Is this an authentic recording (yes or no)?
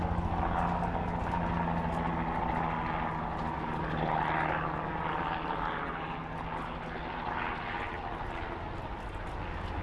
yes